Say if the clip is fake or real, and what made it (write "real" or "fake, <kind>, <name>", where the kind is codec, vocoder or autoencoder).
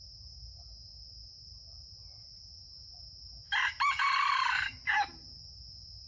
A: real